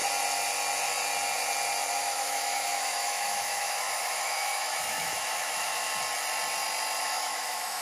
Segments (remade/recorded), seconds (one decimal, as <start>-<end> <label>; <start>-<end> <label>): 0.0-2.0 recorded; 2.0-5.9 remade; 5.9-7.0 recorded; 7.0-7.8 remade